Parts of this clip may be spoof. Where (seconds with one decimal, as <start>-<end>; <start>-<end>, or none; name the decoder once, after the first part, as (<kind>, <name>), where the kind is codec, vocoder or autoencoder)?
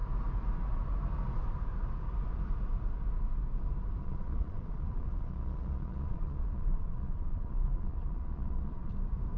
4.0-8.9 (vocoder, Vocos)